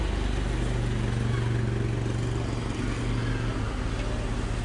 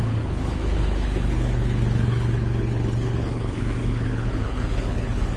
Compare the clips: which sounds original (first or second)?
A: first